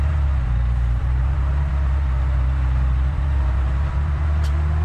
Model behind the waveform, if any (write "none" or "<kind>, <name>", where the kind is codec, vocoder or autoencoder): vocoder, BigVGAN v2